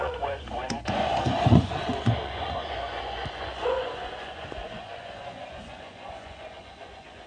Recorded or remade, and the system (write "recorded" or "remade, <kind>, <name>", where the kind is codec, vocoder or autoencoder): remade, vocoder, Vocos